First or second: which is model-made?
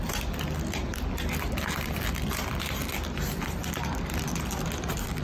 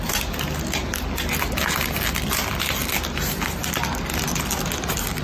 first